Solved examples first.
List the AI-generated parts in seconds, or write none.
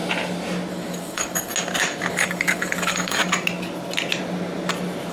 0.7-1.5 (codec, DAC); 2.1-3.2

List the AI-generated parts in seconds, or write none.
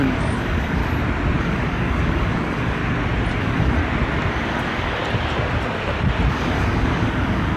0.0-0.8 (codec, DAC); 1.4-2.8; 3.4-3.8; 4.3-5.0; 6.3-7.6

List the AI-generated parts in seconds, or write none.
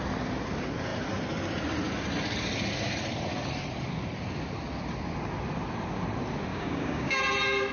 6.5-7.2 (codec, DAC)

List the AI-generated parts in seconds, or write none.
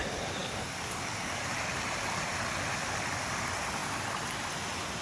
0.4-1.5 (codec, DAC)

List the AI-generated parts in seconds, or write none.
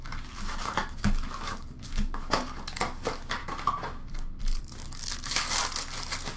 0.0-3.4 (codec, DAC); 4.6-5.6